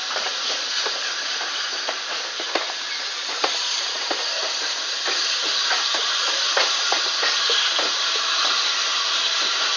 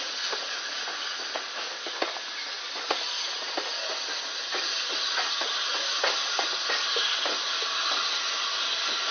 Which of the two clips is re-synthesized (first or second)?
first